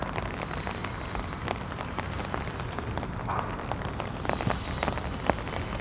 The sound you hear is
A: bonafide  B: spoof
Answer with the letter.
A